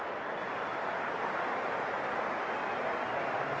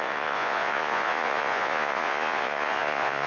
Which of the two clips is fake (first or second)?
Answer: second